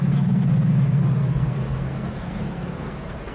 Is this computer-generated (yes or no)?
yes